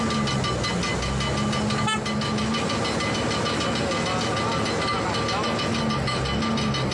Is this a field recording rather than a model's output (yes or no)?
yes